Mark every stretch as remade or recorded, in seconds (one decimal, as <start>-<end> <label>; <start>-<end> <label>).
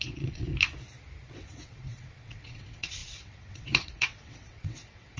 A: 0.0-0.5 remade; 0.5-1.3 recorded; 1.3-5.2 remade